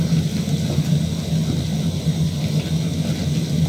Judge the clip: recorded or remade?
recorded